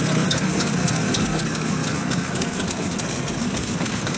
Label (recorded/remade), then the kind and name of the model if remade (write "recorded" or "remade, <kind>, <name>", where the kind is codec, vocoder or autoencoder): remade, codec, SNAC